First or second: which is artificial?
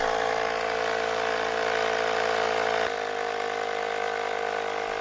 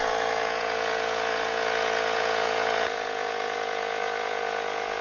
second